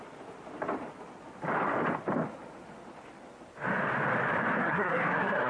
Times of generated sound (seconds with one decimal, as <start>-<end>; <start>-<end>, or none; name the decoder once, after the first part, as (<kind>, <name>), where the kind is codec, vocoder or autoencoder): 4.6-5.5 (codec, SNAC)

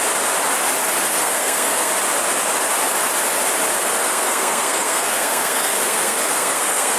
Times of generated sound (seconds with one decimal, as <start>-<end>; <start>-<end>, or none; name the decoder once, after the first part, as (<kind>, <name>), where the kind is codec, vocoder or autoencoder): 1.1-1.9 (codec, SNAC); 4.0-7.0

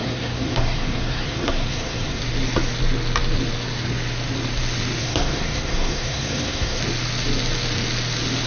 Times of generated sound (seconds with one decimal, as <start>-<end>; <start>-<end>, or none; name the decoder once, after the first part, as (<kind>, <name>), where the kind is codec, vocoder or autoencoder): 0.0-2.2 (codec, SNAC); 5.0-6.8

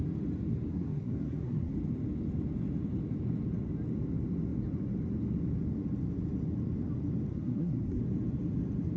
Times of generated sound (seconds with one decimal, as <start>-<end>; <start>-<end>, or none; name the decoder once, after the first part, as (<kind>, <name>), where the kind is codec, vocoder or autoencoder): 0.7-1.7 (codec, SNAC); 7.3-8.0

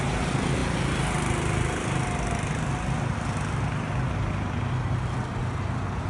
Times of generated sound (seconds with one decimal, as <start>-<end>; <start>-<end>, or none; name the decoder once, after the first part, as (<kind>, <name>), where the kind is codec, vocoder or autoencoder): none

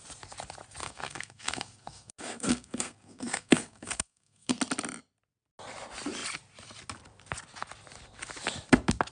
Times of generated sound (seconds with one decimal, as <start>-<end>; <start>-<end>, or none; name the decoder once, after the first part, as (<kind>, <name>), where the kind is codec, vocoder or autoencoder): 0.8-4.6 (codec, SNAC)